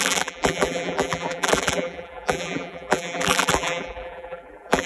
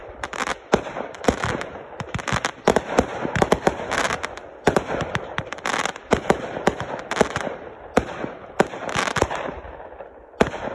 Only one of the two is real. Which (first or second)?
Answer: second